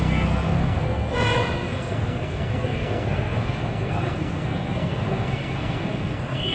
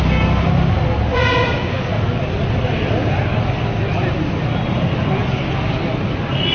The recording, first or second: second